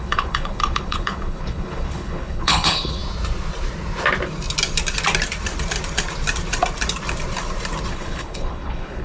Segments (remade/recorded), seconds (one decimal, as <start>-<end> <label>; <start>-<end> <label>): 0.0-3.0 remade; 3.0-7.9 recorded; 7.9-9.0 remade